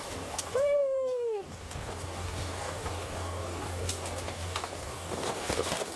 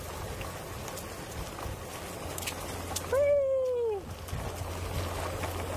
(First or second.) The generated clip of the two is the first